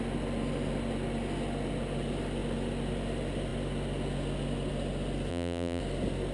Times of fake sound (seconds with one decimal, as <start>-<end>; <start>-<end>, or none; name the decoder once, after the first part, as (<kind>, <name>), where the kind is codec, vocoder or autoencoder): 5.3-5.8 (vocoder, BigVGAN v2)